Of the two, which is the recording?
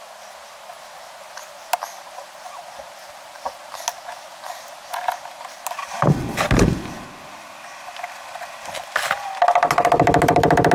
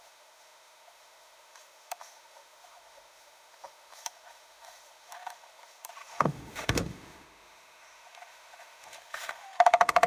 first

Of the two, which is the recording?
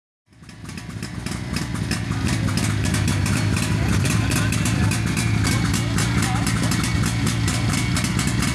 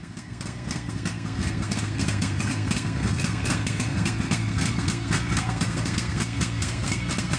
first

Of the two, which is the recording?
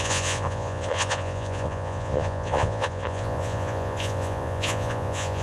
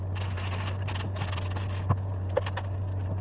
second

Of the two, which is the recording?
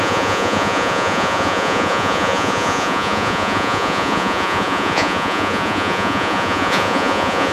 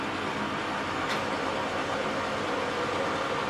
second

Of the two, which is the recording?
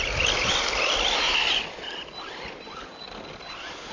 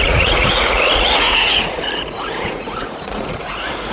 first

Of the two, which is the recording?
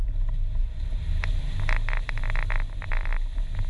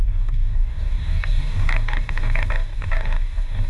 first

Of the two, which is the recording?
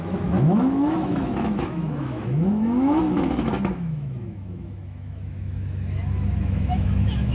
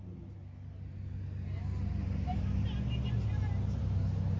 second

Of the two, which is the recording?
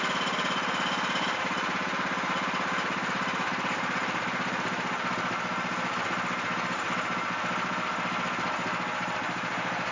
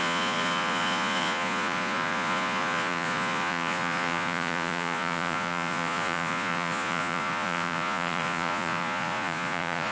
first